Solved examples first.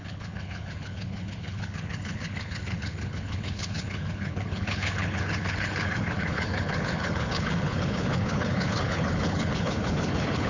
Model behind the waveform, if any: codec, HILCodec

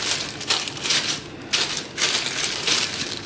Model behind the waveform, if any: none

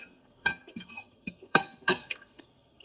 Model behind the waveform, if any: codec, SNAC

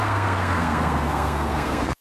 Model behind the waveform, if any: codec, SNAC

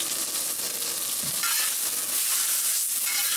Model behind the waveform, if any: none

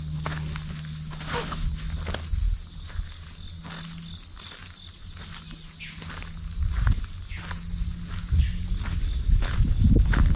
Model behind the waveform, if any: none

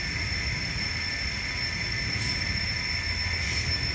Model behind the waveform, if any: none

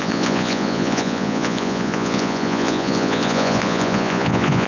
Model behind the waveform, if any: vocoder, Vocos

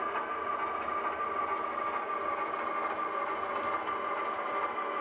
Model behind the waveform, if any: none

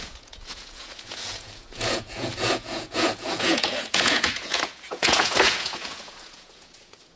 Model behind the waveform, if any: vocoder, Vocos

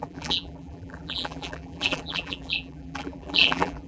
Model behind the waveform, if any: vocoder, BigVGAN v2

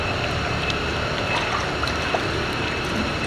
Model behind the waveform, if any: none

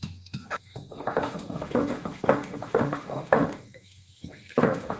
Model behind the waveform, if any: autoencoder, DAC-VAE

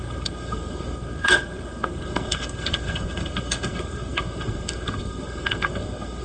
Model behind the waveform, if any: codec, SNAC